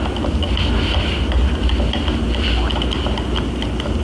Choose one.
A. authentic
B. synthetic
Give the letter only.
A